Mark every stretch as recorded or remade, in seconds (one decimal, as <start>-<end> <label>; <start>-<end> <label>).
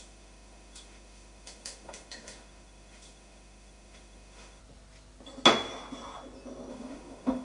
0.0-4.6 remade; 4.6-6.7 recorded; 6.7-7.4 remade